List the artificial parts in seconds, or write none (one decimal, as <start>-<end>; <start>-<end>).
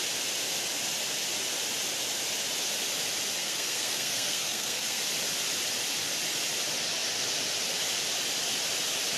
3.4-5.0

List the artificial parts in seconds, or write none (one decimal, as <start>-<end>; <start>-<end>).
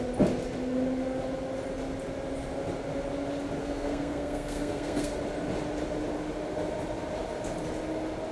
3.6-5.1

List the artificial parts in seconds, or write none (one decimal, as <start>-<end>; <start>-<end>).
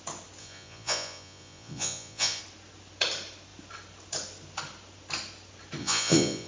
0.4-2.4; 5.8-6.5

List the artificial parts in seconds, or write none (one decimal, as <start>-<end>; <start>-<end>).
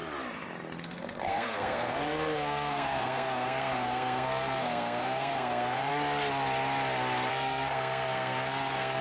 0.8-5.9; 7.3-9.0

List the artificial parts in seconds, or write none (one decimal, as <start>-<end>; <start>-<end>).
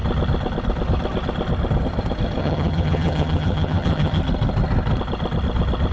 2.4-4.2